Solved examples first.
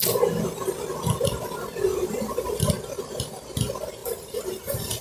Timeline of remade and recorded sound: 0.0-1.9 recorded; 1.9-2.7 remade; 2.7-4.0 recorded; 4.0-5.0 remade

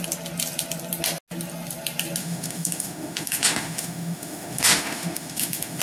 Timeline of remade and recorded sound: 0.0-2.2 recorded; 2.2-5.8 remade